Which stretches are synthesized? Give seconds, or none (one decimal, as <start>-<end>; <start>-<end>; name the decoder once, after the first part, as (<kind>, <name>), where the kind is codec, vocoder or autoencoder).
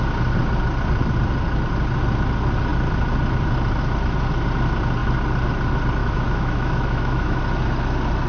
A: 6.0-7.4 (autoencoder, DAC-VAE)